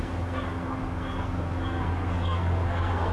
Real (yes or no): no